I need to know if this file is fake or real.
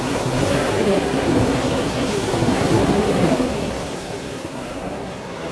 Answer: fake